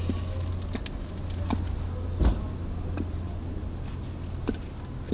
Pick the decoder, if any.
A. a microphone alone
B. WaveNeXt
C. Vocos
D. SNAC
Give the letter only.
A